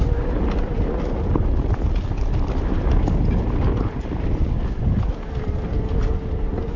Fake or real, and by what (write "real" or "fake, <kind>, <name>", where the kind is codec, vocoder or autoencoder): real